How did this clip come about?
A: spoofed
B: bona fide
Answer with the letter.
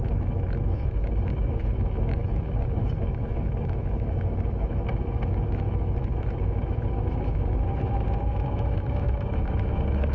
A